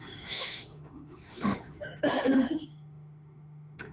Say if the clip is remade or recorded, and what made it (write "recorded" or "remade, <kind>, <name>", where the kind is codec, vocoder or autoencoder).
remade, autoencoder, DAC-VAE